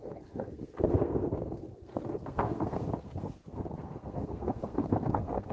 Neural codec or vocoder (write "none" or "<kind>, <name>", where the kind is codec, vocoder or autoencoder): codec, SNAC